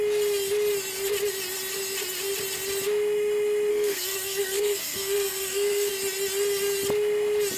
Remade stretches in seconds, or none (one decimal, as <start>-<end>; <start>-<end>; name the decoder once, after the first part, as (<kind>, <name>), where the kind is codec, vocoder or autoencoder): 3.7-5.9 (codec, SNAC)